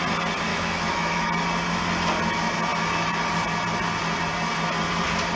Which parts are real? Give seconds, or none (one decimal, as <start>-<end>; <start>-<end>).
0.0-0.5; 1.3-5.4